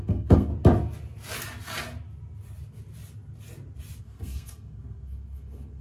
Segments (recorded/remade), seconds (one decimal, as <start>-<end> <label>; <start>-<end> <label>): 0.0-0.5 remade; 0.5-4.0 recorded; 4.0-5.8 remade